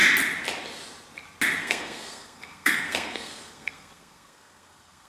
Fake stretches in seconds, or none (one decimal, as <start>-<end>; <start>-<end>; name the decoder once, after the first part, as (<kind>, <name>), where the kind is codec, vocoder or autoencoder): 1.6-5.1 (codec, SNAC)